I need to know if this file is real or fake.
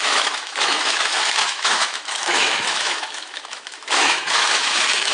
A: fake